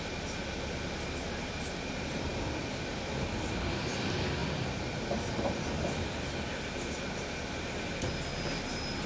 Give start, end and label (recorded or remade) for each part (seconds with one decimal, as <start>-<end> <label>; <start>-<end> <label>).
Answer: 0.0-9.1 recorded